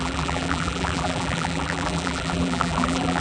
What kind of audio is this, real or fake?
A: fake